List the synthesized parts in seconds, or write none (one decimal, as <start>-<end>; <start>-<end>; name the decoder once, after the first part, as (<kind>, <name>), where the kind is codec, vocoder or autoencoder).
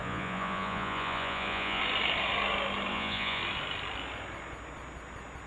0.0-1.8 (vocoder, Vocos); 2.9-3.4